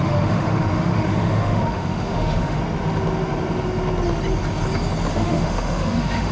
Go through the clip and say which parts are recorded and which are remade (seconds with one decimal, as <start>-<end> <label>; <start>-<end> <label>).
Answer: 0.0-2.6 remade; 2.6-5.1 recorded; 5.1-6.3 remade